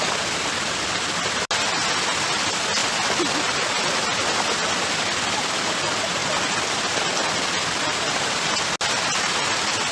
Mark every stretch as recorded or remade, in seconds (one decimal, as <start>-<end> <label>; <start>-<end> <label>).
0.0-9.9 recorded